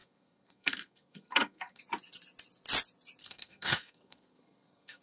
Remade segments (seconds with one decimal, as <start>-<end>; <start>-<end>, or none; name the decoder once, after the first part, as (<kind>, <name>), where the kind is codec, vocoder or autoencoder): 0.0-1.8 (codec, SNAC); 3.2-5.0